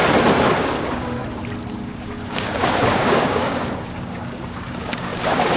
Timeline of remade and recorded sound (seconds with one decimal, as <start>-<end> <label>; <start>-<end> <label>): 0.0-0.6 recorded; 0.6-1.2 remade; 1.2-1.7 recorded; 1.7-5.6 remade